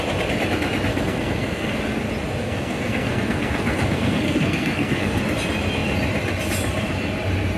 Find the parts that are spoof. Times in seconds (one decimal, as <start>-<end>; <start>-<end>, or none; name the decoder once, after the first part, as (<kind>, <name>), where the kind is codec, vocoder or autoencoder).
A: 0.9-1.8 (codec, SNAC); 2.4-5.2